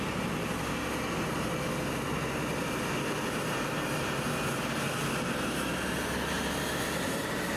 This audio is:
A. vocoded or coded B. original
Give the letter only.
B